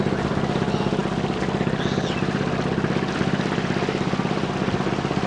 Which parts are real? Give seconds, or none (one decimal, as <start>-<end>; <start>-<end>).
0.0-5.3